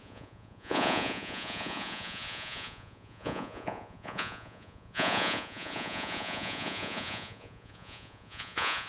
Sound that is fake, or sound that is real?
fake